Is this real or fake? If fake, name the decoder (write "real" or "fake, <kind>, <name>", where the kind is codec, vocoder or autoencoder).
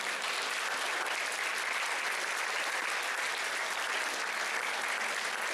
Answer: real